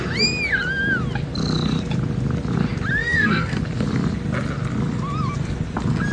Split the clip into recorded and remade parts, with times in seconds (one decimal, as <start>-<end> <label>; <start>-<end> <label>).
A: 0.0-3.0 recorded; 3.0-3.6 remade; 3.6-6.1 recorded